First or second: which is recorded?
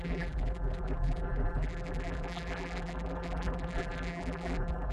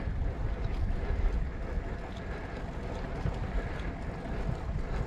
second